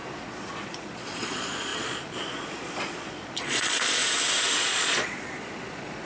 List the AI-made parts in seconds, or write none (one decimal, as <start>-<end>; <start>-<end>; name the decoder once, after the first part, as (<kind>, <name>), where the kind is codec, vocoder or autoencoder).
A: 0.0-4.0 (vocoder, Vocos); 4.6-6.1